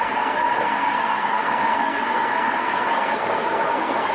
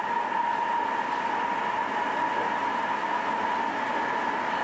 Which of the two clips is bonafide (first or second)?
second